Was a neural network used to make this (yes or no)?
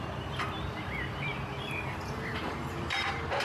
yes